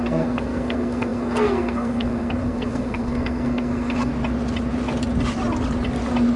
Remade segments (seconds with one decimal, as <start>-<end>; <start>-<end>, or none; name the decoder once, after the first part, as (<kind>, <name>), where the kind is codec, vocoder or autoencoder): 0.0-4.1 (codec, SNAC)